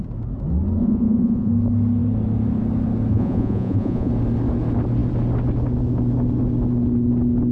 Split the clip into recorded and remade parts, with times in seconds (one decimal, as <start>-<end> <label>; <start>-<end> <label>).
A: 0.0-0.8 recorded; 0.8-1.5 remade; 1.5-3.1 recorded; 3.1-4.1 remade; 4.1-7.5 recorded

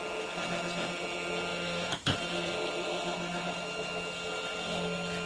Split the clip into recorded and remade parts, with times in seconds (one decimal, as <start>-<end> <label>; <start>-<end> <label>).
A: 0.0-1.5 recorded; 1.5-2.5 remade; 2.5-5.3 recorded

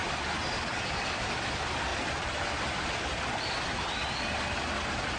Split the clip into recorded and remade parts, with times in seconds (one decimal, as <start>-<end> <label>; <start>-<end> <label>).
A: 0.0-5.2 recorded

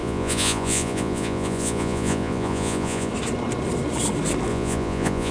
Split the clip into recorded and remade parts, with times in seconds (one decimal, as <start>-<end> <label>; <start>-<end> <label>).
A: 0.0-3.1 remade; 3.1-4.5 recorded; 4.5-5.3 remade